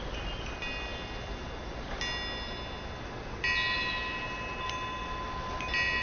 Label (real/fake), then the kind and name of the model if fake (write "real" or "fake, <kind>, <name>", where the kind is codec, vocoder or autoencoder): real